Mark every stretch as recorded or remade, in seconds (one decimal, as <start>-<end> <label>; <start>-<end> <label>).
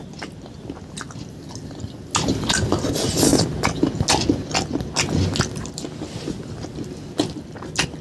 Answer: 0.0-8.0 recorded